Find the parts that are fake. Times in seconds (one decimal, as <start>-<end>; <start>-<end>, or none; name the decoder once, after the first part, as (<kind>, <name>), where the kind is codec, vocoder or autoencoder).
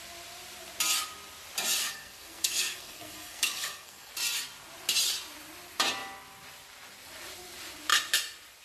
1.8-4.1 (codec, SNAC)